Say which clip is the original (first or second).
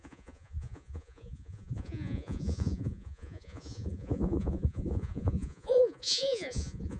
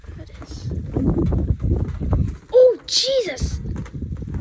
second